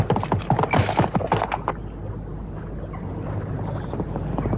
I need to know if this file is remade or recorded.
recorded